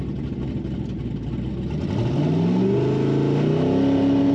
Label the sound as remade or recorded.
recorded